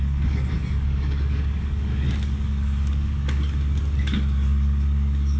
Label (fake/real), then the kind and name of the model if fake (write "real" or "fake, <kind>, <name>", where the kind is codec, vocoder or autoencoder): fake, codec, DAC